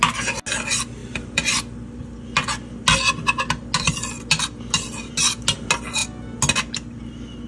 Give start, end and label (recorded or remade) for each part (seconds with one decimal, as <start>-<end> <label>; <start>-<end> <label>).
0.0-1.0 recorded; 1.0-2.0 remade; 2.0-7.5 recorded